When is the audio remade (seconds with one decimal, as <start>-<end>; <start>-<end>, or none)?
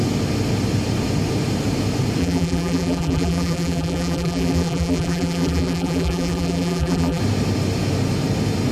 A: 2.2-7.2